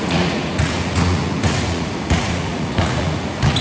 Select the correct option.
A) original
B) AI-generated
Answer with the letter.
B